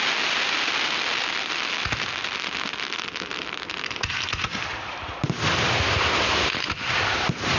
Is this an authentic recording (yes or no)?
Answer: yes